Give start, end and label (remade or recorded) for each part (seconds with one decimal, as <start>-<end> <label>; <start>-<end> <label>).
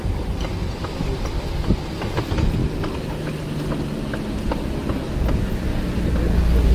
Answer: 0.0-6.7 recorded